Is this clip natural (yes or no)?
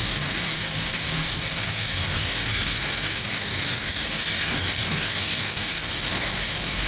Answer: no